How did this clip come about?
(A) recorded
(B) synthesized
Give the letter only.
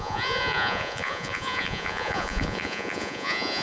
B